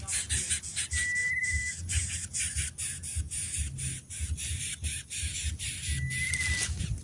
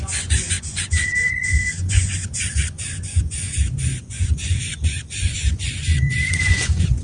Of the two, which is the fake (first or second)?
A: second